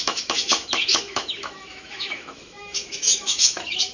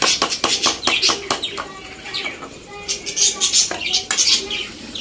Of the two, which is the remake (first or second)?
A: first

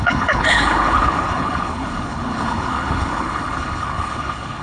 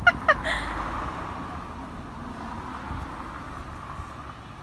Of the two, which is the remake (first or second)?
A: first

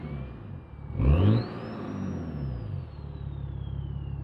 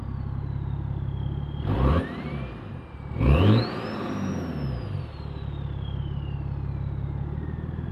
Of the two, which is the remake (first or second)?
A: second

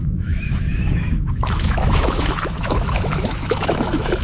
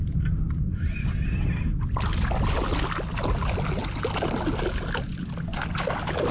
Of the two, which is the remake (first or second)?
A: first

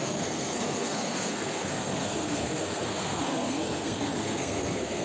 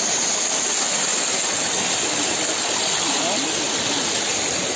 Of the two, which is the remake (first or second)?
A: first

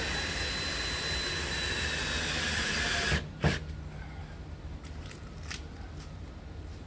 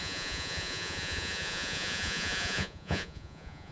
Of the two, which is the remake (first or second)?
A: second